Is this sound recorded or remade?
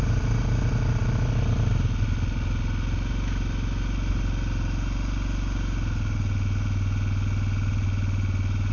recorded